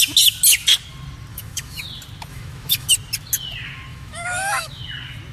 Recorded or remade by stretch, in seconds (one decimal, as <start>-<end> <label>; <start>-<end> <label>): 0.0-1.3 recorded; 1.3-1.8 remade; 1.8-2.3 recorded; 2.3-2.9 remade; 2.9-3.9 recorded; 3.9-4.8 remade; 4.8-5.3 recorded